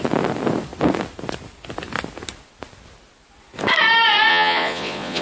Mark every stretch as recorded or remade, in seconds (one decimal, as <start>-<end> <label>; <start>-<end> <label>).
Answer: 0.0-4.3 recorded; 4.3-5.2 remade